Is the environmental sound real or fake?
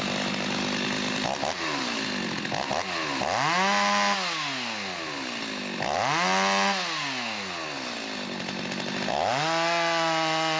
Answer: real